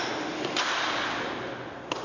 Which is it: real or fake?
real